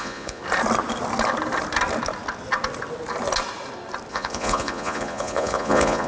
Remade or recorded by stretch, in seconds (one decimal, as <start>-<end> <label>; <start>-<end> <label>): 0.0-0.4 remade; 0.4-4.1 recorded; 4.1-6.1 remade